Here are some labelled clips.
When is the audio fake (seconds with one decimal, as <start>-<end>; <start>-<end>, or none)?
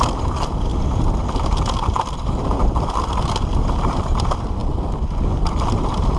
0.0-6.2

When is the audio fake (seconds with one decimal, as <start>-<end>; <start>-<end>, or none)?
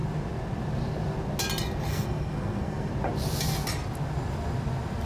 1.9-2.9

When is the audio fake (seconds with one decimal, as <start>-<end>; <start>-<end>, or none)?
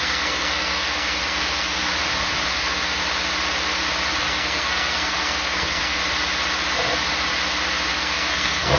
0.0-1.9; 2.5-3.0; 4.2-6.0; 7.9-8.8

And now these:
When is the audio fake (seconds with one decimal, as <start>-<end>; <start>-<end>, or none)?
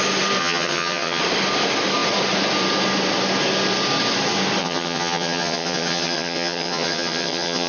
0.4-1.2; 4.6-7.7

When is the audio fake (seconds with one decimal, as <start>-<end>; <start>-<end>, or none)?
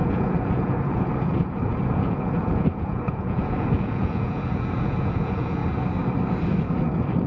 0.0-5.6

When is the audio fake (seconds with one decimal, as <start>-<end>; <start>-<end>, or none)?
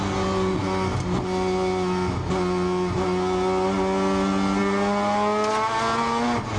none